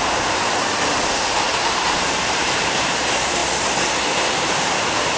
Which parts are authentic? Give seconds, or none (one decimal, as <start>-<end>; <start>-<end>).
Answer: 3.4-3.9